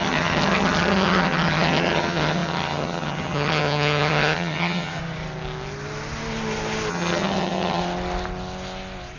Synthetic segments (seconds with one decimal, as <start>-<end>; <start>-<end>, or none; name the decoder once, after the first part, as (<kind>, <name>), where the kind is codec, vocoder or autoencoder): 0.0-5.0 (vocoder, HiFi-GAN); 6.9-7.8